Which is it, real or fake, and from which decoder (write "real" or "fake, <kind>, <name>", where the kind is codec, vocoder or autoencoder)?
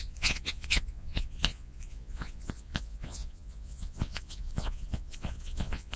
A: fake, vocoder, Vocos